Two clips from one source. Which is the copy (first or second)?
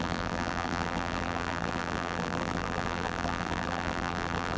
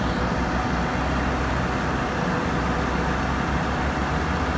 first